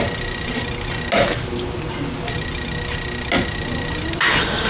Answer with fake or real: real